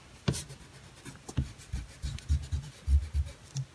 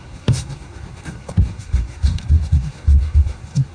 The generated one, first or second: second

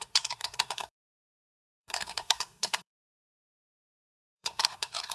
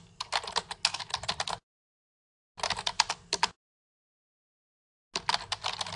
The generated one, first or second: first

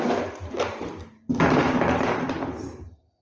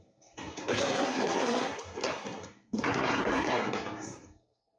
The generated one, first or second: second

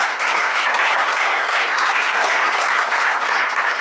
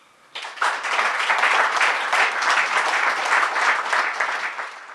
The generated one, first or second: first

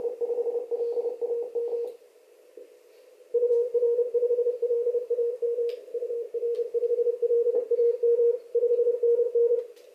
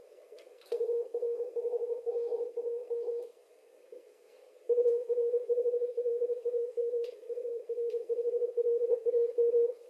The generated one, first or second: second